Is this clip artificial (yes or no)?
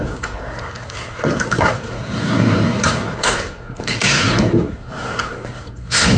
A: yes